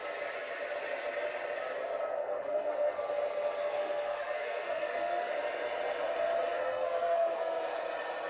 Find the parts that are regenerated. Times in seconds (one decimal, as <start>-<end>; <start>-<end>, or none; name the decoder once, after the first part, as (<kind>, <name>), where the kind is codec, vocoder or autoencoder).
2.2-3.0 (codec, SNAC); 3.6-5.3; 6.6-7.7